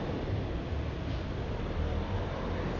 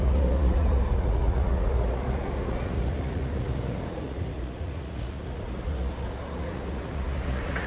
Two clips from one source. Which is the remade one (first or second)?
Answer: second